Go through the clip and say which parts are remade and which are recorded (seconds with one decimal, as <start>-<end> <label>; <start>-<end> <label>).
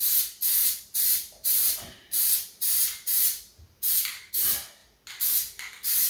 0.0-0.6 recorded; 0.6-4.3 remade; 4.3-6.1 recorded